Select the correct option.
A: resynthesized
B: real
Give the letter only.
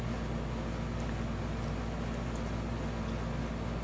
B